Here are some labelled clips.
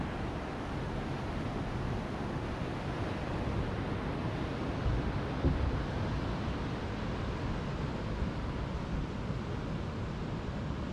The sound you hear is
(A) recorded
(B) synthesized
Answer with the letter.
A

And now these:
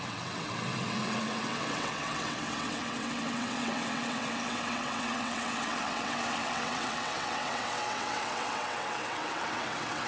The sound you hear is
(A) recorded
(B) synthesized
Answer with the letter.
B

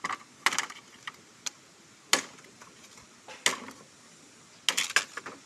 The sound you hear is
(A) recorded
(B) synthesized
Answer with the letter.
A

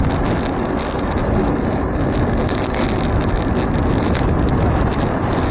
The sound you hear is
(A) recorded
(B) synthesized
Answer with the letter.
A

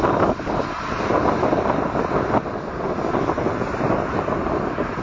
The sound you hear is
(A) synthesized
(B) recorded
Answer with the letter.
B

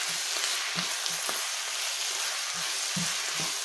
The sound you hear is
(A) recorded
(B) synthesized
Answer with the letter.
A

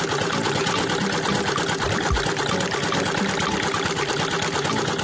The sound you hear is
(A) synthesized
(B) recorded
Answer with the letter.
B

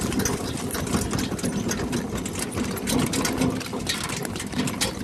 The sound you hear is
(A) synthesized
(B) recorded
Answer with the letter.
B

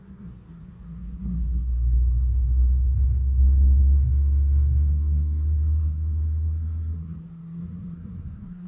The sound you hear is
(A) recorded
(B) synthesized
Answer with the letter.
B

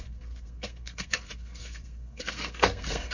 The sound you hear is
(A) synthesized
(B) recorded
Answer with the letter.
A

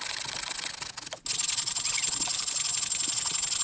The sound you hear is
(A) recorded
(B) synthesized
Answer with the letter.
A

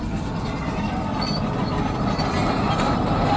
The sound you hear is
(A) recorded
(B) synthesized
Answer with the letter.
A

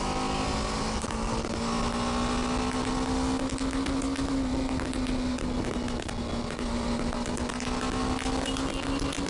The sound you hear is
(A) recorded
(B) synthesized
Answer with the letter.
A